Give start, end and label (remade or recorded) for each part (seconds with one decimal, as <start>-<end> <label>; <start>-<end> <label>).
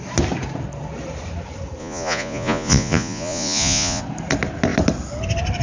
0.0-1.8 recorded; 1.8-4.0 remade; 4.0-5.6 recorded